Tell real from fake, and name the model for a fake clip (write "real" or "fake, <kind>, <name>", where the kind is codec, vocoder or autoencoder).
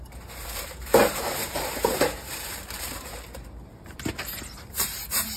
fake, vocoder, BigVGAN v2